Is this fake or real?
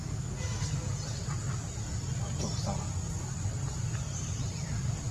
real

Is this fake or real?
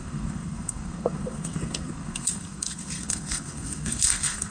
fake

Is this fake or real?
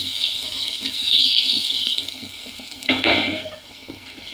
fake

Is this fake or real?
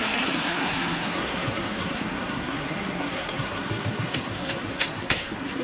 fake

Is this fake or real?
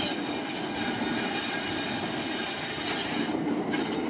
real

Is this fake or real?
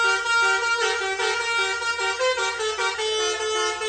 real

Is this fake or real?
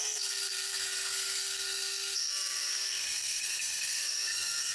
fake